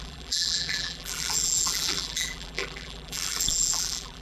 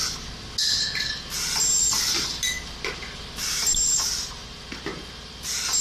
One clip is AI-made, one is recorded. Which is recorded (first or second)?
second